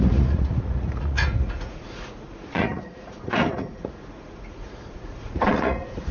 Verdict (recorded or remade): remade